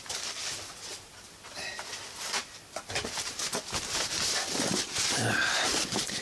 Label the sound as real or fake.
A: real